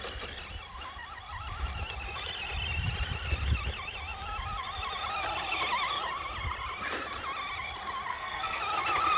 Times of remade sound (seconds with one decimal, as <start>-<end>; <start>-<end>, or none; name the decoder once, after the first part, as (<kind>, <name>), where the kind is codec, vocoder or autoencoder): 8.1-8.6 (codec, SNAC)